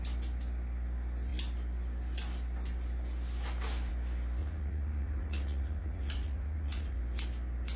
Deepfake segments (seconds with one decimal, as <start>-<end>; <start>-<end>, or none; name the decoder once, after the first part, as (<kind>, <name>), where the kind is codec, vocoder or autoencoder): 4.4-7.0 (vocoder, Vocos)

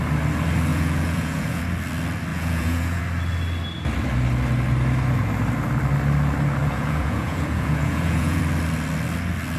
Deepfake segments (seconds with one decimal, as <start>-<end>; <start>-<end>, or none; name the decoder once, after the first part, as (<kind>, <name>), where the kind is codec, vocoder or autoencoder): 0.7-1.6 (vocoder, Vocos); 2.3-3.0; 6.6-8.4

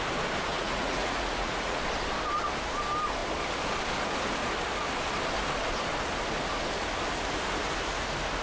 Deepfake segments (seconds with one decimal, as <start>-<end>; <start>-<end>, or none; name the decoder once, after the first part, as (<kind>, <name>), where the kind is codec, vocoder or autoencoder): 0.5-1.8 (vocoder, Vocos)

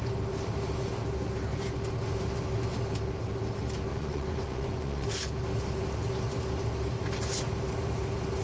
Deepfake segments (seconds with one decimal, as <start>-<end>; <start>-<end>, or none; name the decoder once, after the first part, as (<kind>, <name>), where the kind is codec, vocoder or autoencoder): 3.9-5.1 (vocoder, Vocos)

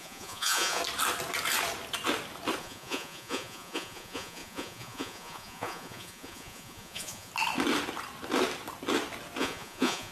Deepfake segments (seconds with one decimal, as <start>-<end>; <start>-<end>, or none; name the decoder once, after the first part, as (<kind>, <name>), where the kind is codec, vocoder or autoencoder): 0.0-0.8 (vocoder, Vocos); 2.6-7.3; 9.4-10.1

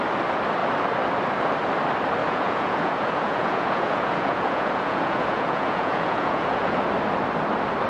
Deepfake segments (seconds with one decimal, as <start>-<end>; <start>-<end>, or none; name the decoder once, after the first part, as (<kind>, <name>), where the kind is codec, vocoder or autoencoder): 2.2-6.9 (vocoder, Vocos)

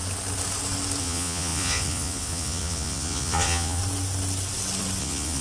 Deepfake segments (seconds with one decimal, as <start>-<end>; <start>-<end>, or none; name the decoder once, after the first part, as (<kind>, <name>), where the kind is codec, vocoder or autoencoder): 1.0-3.8 (vocoder, Vocos); 5.0-5.4

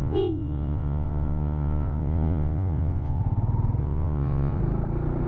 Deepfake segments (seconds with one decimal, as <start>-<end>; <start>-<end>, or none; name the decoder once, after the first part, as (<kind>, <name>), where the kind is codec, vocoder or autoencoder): 0.0-3.2 (vocoder, Vocos); 3.8-4.6